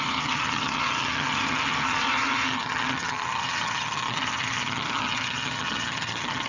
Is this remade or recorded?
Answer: remade